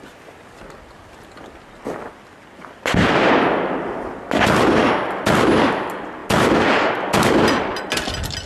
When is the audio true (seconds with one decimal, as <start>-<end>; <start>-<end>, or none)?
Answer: 0.0-8.5